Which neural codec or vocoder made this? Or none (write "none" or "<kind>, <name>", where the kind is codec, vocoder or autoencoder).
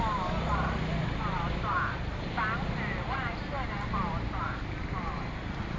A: none